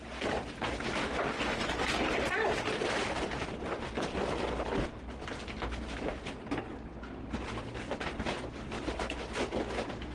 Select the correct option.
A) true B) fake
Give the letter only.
A